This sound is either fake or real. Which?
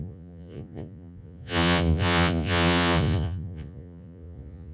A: fake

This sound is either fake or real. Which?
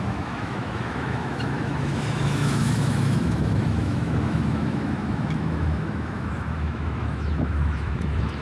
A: fake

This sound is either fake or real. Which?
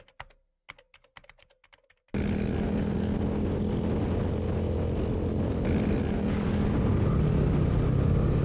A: real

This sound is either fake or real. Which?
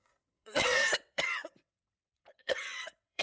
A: fake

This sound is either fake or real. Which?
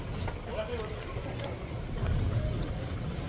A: real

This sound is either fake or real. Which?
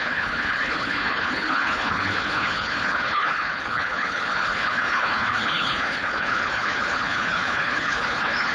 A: fake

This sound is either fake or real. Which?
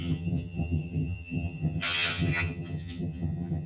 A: fake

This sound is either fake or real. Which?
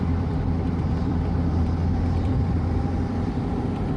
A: fake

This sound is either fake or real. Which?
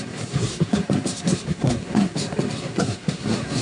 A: fake